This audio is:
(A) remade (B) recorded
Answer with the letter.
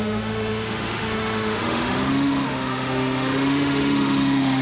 A